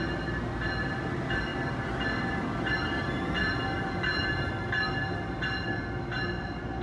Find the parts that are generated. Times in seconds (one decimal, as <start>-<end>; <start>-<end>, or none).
none